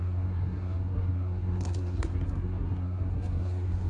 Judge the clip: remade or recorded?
remade